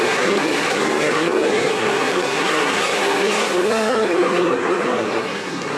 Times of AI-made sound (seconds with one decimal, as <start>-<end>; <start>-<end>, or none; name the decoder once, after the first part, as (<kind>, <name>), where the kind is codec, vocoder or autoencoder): 0.0-5.8 (codec, SNAC)